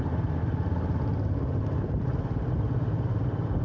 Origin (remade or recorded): recorded